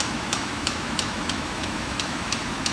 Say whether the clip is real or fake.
fake